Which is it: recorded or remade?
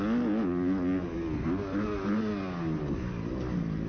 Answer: recorded